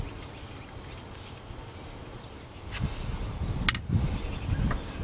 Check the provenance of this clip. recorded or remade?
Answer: recorded